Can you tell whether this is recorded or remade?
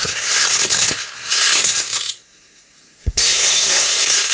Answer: remade